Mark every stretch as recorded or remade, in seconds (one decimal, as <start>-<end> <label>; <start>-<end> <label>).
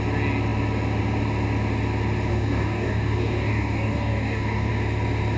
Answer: 0.0-2.3 recorded; 2.3-4.7 remade; 4.7-5.4 recorded